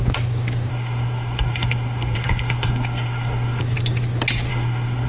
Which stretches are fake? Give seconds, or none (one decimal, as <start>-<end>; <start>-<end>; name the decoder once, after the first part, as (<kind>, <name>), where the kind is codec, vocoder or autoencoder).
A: 0.7-3.6 (codec, SNAC); 4.5-5.1